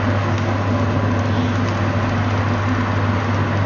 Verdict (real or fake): real